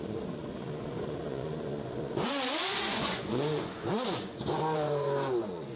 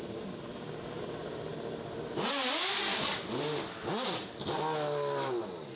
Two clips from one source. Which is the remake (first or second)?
first